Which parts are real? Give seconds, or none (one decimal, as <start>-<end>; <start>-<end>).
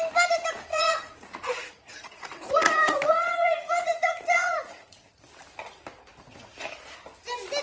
0.0-0.7; 5.2-7.6